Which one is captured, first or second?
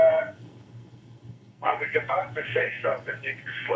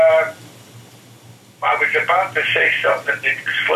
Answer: second